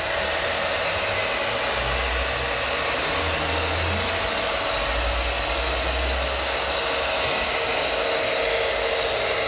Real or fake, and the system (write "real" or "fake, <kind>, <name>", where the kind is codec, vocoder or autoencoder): real